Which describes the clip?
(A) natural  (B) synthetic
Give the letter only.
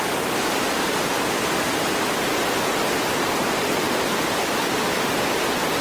A